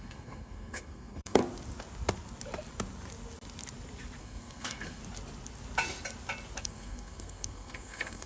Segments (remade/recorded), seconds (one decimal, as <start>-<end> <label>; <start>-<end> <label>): 0.0-1.4 remade; 1.4-4.2 recorded; 4.2-5.0 remade; 5.0-6.6 recorded; 6.6-8.3 remade